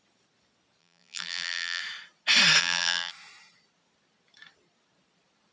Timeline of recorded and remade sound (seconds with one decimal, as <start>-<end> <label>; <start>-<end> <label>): 0.0-0.8 recorded; 0.8-1.8 remade; 1.8-2.6 recorded; 2.6-3.1 remade; 3.1-5.5 recorded